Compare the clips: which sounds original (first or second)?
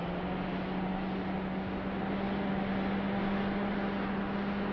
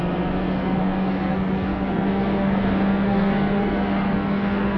first